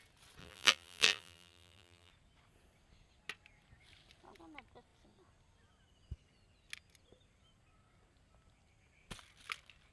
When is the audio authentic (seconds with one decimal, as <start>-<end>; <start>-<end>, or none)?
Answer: 0.0-0.4; 2.1-9.9